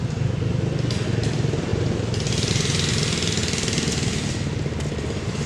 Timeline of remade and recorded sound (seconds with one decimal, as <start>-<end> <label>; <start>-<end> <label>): 0.0-5.5 recorded